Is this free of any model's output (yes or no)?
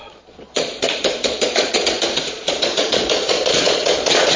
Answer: no